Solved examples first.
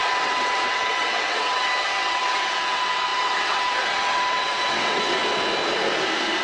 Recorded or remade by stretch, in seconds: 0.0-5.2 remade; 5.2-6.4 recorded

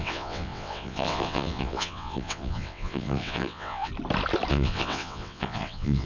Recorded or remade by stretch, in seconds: 0.0-3.9 remade; 3.9-4.5 recorded; 4.5-6.1 remade

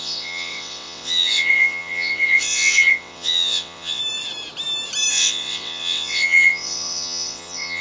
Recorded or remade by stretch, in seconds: 0.0-4.0 remade; 4.0-5.1 recorded; 5.1-7.8 remade

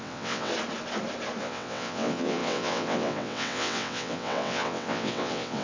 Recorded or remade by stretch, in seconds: 0.0-0.5 remade; 0.5-1.4 recorded; 1.4-5.6 remade

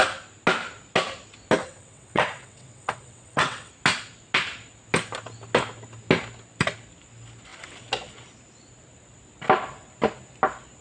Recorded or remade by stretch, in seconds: 0.0-1.6 recorded; 1.6-3.7 remade; 3.7-10.8 recorded

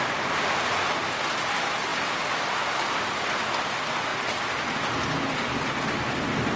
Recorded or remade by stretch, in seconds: 0.0-6.6 recorded